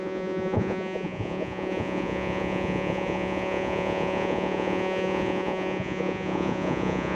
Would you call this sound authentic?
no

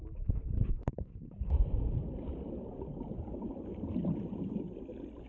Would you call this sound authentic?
yes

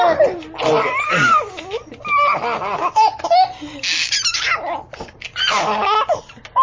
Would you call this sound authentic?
yes